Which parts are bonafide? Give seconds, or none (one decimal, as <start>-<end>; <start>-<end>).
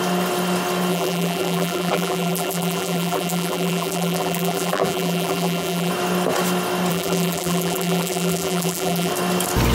0.0-0.9; 5.9-6.9; 9.1-9.7